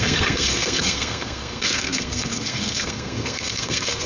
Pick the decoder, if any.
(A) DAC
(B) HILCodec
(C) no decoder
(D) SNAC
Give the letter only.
D